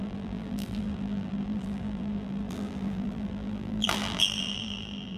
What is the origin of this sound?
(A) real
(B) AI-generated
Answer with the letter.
B